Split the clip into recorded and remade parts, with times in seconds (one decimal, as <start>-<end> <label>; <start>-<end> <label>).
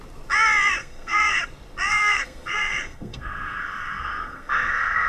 0.0-0.8 recorded; 0.8-1.4 remade; 1.4-1.9 recorded; 1.9-5.1 remade